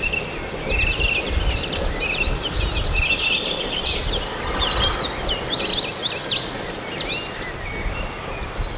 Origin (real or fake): real